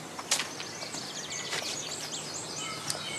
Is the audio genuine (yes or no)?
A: yes